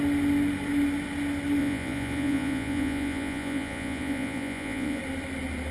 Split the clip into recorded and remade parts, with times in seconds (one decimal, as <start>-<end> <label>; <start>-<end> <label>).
0.0-1.6 recorded; 1.6-5.0 remade; 5.0-5.7 recorded

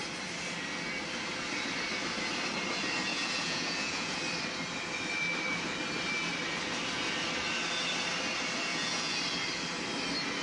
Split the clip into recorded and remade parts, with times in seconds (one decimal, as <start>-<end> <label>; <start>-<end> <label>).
0.0-3.1 recorded; 3.1-4.2 remade; 4.2-8.7 recorded; 8.7-9.2 remade; 9.2-10.4 recorded